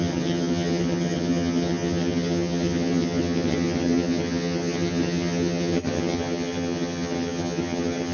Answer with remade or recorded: remade